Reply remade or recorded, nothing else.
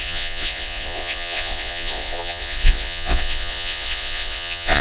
remade